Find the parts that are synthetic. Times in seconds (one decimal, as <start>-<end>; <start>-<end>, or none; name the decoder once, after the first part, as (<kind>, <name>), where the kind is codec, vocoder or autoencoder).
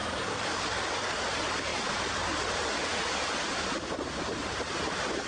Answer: 0.0-1.2 (codec, DAC)